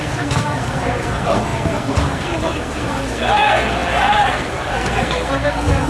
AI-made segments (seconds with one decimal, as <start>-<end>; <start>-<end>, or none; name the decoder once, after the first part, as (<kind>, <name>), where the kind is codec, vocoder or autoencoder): 0.0-5.9 (codec, SNAC)